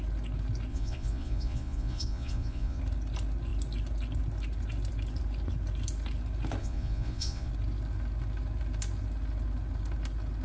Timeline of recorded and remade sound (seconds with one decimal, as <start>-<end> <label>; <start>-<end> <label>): 0.0-0.7 recorded; 0.7-2.8 remade; 2.8-6.6 recorded; 6.6-7.5 remade; 7.5-10.4 recorded